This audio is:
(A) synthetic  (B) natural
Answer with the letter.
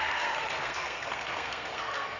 A